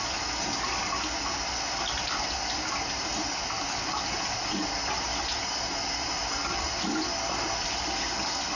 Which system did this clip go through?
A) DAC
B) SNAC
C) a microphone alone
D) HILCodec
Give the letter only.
C